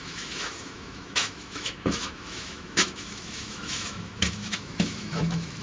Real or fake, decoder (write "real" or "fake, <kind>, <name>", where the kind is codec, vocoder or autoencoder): fake, autoencoder, DAC-VAE